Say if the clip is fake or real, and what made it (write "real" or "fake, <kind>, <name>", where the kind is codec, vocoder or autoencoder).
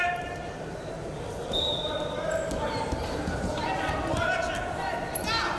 fake, vocoder, BigVGAN v2